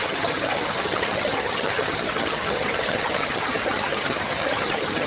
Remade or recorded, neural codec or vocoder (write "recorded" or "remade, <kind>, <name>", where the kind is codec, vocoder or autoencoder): remade, vocoder, HiFi-GAN